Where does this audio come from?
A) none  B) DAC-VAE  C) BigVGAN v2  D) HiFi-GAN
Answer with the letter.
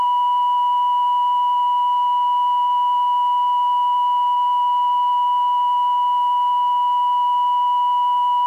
A